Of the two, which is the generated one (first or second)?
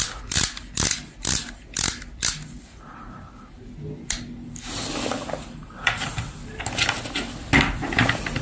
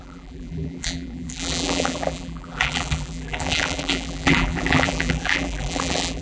second